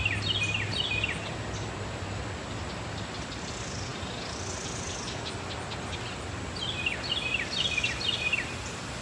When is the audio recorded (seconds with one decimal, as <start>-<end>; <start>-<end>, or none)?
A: 0.0-9.0